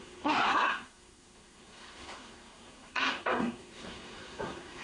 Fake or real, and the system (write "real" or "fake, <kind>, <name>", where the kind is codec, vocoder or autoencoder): fake, codec, SNAC